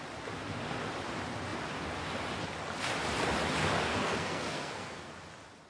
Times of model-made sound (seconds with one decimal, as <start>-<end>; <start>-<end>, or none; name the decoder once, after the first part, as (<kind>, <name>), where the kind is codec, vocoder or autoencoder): 3.9-5.1 (codec, SNAC)